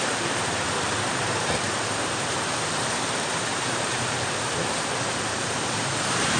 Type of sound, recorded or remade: remade